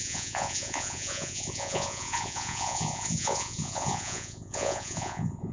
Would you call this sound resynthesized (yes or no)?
yes